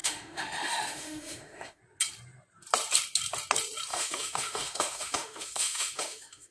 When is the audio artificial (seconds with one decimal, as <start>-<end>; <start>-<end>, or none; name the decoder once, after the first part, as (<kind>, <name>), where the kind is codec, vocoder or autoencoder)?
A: 0.0-1.8 (autoencoder, DAC-VAE); 3.9-6.5